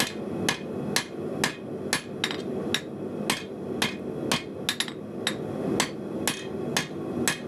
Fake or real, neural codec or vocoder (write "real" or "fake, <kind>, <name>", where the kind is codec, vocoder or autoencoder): real